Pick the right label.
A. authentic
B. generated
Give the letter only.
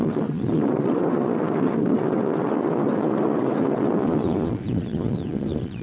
B